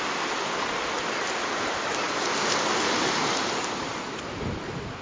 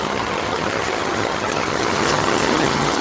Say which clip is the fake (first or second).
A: second